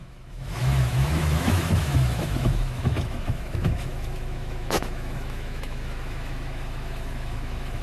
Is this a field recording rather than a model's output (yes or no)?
no